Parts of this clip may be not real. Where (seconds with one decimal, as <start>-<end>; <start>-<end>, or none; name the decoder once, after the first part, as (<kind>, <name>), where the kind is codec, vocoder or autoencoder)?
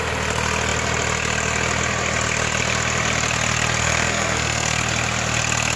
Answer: 3.8-4.8 (codec, SNAC)